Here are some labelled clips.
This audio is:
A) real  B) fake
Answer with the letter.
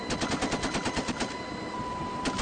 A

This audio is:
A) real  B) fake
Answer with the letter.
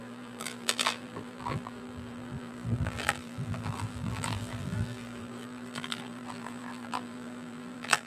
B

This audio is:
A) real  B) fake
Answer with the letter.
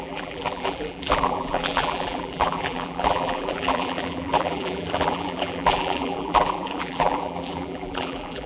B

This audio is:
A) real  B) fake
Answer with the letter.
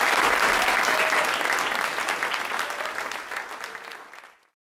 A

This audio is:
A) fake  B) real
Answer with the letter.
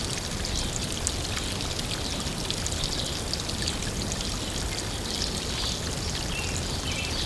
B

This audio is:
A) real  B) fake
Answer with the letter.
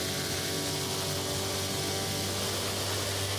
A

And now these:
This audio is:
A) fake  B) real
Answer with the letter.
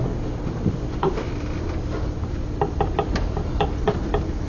A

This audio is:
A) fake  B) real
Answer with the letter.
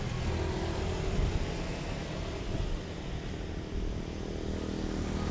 B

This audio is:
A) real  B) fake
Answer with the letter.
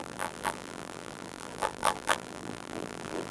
B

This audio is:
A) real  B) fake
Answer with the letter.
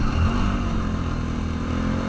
A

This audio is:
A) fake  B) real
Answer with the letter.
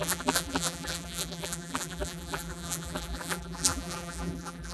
A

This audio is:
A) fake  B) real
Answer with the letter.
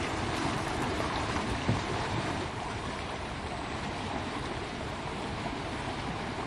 A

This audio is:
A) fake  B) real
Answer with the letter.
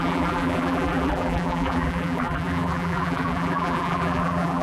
A